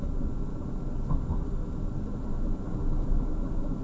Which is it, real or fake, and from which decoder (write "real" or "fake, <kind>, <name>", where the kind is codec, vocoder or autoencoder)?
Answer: real